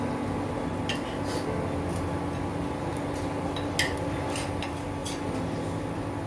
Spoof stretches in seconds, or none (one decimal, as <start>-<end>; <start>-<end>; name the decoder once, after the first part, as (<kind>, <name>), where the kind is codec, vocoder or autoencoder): none